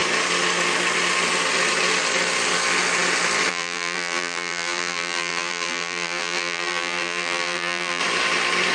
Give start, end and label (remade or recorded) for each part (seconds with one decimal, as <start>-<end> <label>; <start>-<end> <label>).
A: 0.0-3.5 recorded; 3.5-8.0 remade; 8.0-8.7 recorded